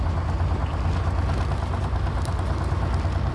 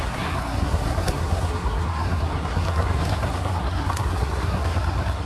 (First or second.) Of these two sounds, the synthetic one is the second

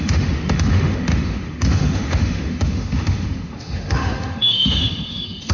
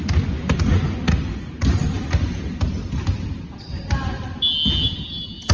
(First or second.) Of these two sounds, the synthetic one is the first